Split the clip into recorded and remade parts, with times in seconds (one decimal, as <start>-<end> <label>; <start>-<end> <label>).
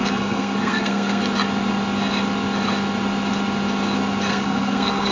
0.0-1.2 remade; 1.2-4.3 recorded; 4.3-5.1 remade